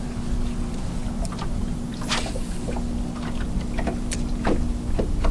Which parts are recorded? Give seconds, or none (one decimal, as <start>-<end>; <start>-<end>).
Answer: 0.0-5.3